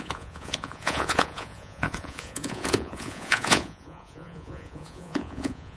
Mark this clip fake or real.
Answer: fake